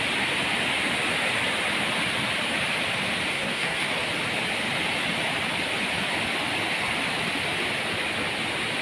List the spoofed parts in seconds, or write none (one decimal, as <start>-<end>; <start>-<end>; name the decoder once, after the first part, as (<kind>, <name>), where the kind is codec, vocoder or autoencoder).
3.3-3.9 (codec, SNAC)